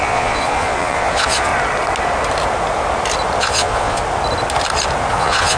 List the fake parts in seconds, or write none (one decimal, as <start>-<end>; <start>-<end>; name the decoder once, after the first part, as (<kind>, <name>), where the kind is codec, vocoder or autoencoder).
0.0-1.5 (vocoder, Vocos); 3.4-4.0; 5.1-5.6